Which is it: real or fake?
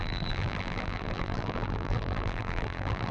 fake